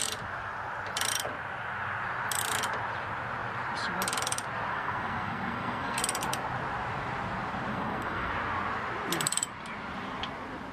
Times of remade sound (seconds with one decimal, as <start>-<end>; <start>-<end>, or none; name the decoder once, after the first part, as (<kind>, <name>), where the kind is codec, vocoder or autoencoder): 4.7-6.0 (codec, SNAC); 7.7-8.3